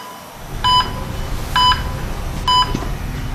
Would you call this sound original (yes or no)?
yes